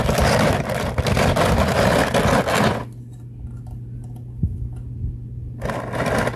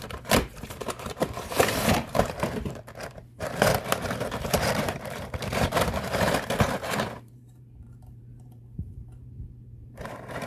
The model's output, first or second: second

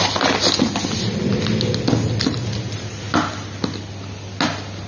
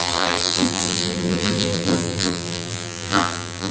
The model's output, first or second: second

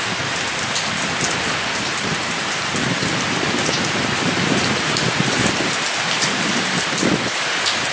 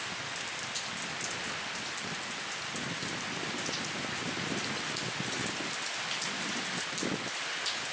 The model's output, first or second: first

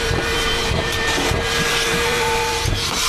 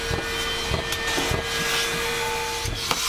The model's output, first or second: first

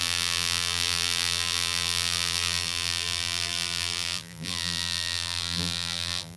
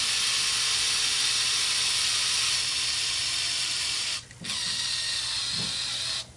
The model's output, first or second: first